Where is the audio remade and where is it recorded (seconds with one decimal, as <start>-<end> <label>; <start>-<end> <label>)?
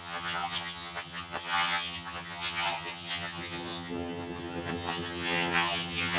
0.0-6.2 remade